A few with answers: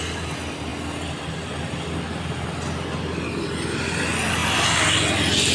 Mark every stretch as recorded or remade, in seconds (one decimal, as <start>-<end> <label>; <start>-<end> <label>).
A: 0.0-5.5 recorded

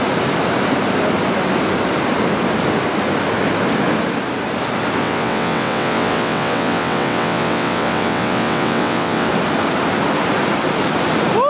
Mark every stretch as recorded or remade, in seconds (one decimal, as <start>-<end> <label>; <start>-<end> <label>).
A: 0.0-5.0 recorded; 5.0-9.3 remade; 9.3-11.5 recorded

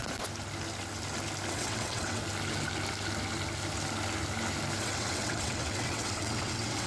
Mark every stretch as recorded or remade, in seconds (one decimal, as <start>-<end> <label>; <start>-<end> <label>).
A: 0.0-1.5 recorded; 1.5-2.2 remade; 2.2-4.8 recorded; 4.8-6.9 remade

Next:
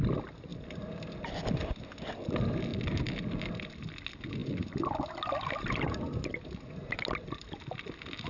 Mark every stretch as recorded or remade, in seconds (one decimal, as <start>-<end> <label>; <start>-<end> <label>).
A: 0.0-8.3 recorded

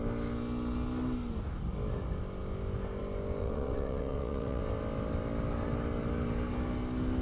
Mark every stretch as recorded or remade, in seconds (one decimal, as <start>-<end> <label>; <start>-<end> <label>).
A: 0.0-3.4 recorded; 3.4-4.6 remade; 4.6-7.2 recorded

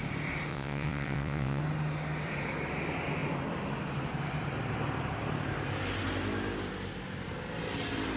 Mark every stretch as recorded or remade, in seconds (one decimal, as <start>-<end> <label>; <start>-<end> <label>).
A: 0.0-0.5 recorded; 0.5-1.6 remade; 1.6-8.2 recorded